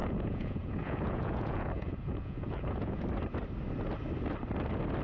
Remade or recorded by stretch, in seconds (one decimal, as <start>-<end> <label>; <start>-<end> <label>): 0.0-3.0 remade; 3.0-5.0 recorded